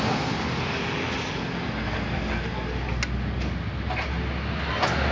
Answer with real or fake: real